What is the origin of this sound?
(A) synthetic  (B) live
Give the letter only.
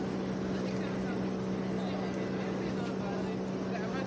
B